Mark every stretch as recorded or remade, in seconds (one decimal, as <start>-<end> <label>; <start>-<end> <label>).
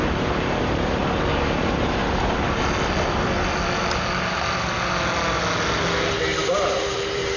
0.0-1.0 remade; 1.0-1.6 recorded; 1.6-2.0 remade; 2.0-6.2 recorded; 6.2-7.4 remade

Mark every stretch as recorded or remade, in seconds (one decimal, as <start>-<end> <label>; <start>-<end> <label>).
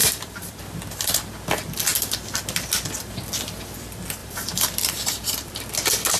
0.0-0.6 remade; 0.6-4.2 recorded; 4.2-5.5 remade; 5.5-6.2 recorded